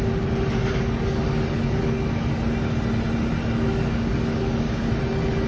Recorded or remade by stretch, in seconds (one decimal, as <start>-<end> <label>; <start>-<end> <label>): 0.0-0.6 recorded; 0.6-2.4 remade; 2.4-3.4 recorded; 3.4-4.9 remade; 4.9-5.5 recorded